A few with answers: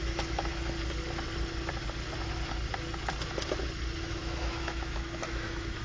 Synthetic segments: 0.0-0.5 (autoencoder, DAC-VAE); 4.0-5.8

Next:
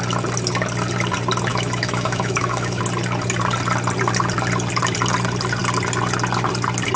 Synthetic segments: 1.5-2.8 (autoencoder, DAC-VAE)

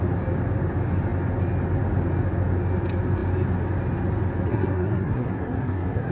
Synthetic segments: 4.5-6.1 (codec, SNAC)

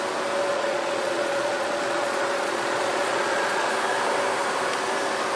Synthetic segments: 0.5-3.7 (vocoder, Vocos)

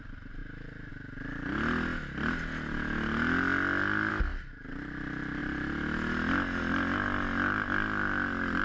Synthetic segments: none